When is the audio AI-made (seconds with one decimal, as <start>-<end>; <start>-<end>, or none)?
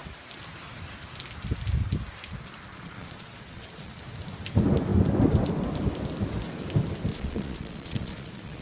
2.7-4.0; 7.1-8.6